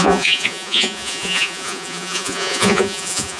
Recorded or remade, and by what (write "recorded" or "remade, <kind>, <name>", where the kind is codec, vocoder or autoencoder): remade, vocoder, Vocos